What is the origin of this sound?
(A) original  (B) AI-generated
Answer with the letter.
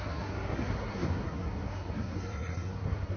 B